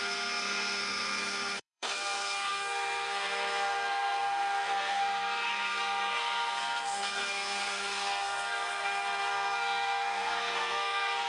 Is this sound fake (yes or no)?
yes